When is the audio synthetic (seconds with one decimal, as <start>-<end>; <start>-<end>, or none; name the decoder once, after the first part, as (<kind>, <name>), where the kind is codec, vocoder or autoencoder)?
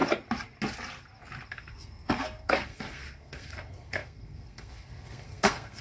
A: 1.5-5.8 (codec, SNAC)